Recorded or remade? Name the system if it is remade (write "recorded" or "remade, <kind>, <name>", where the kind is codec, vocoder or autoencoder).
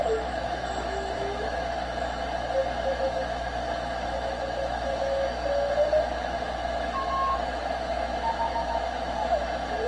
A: remade, autoencoder, DAC-VAE